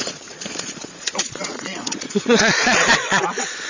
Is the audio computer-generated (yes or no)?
yes